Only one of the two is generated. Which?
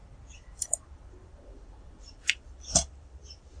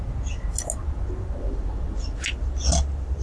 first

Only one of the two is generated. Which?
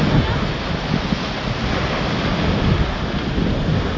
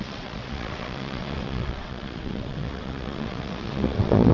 second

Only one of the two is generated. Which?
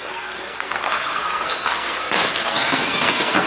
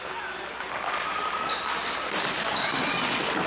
first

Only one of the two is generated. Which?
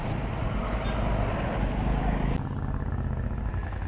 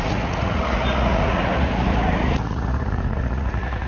second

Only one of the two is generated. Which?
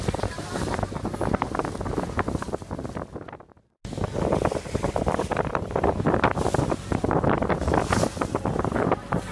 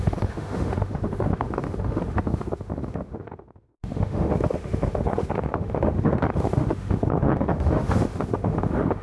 second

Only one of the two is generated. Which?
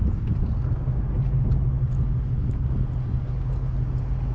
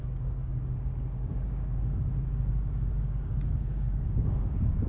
second